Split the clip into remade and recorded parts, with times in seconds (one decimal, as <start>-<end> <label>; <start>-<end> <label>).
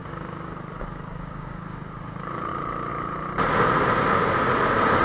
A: 0.0-2.5 remade; 2.5-5.0 recorded